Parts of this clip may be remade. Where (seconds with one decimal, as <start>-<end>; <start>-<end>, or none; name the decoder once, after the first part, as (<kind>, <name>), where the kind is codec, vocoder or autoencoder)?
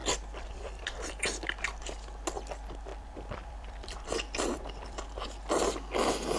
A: 0.0-1.1 (vocoder, BigVGAN v2); 2.9-5.0